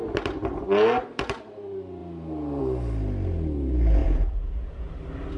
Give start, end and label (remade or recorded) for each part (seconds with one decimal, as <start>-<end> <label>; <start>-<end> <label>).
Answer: 0.0-4.0 recorded; 4.0-4.9 remade; 4.9-5.4 recorded